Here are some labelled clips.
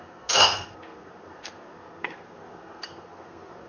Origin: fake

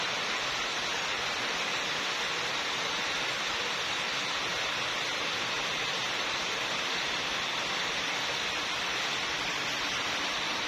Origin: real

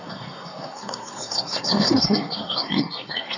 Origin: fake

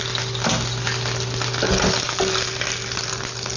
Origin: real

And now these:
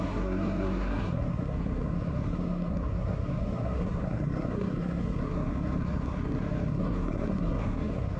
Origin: fake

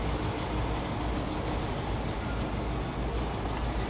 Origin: real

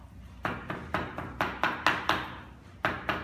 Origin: real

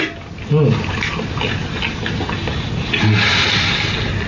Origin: real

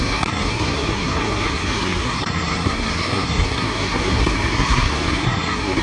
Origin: fake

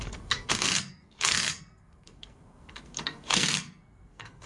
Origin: fake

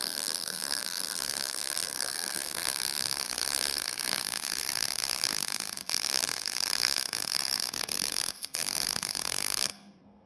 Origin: fake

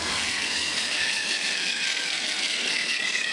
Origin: fake